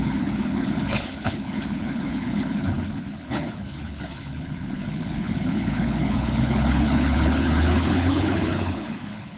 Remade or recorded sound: remade